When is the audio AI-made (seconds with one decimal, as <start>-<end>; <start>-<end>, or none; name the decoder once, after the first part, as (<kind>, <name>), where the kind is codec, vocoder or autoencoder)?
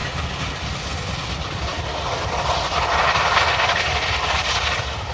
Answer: none